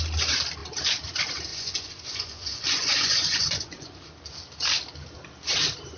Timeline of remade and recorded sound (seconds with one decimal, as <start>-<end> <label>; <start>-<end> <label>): 0.0-1.5 recorded; 1.5-4.0 remade; 4.0-6.0 recorded